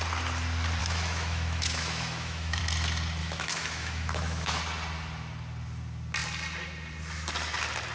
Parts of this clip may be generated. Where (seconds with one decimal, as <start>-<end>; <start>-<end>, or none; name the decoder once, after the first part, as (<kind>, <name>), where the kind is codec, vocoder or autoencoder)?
0.8-2.6 (autoencoder, DAC-VAE); 3.2-4.6